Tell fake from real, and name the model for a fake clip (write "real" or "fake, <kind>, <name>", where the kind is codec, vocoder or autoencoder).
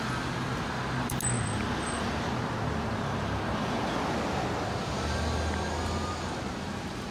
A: real